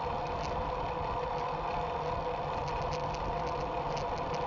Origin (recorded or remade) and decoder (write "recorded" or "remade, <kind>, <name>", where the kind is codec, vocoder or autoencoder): recorded